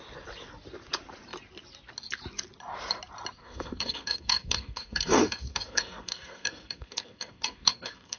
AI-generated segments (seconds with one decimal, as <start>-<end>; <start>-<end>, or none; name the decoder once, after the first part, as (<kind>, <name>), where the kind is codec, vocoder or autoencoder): 3.4-8.2 (codec, SNAC)